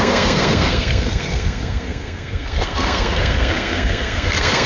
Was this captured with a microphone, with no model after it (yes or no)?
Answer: no